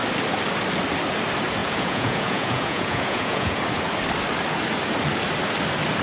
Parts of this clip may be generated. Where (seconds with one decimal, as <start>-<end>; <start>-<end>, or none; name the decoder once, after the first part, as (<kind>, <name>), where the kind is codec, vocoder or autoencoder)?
1.6-3.6 (vocoder, Vocos)